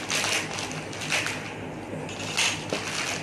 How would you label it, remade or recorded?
recorded